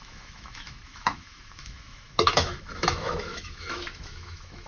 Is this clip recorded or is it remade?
remade